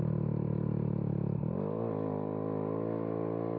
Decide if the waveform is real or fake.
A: real